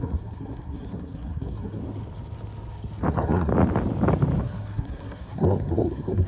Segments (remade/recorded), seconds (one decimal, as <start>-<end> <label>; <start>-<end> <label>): 0.0-1.8 remade; 1.8-3.1 recorded; 3.1-3.5 remade; 3.5-4.4 recorded; 4.4-6.3 remade